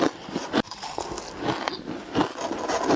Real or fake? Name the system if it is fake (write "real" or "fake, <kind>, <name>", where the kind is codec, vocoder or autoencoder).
real